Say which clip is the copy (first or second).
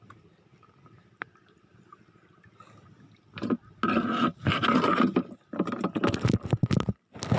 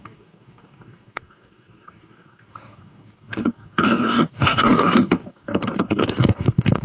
second